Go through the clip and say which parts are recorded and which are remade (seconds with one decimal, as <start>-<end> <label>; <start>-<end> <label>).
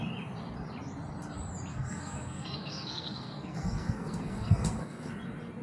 0.0-1.7 recorded; 1.7-5.1 remade; 5.1-5.6 recorded